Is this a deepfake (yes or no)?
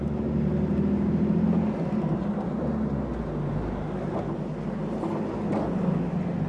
no